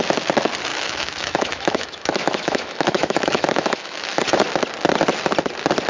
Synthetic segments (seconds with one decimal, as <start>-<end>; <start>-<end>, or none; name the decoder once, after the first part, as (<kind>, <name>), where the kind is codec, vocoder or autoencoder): 0.7-4.2 (autoencoder, DAC-VAE)